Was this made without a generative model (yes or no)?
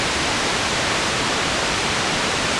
no